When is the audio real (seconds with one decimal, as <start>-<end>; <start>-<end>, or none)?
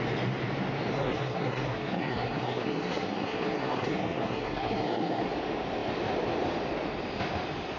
0.0-0.9; 5.2-7.8